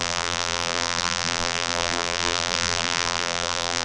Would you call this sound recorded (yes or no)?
no